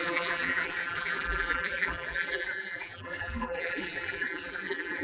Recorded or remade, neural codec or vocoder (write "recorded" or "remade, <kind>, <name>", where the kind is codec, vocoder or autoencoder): remade, vocoder, BigVGAN v2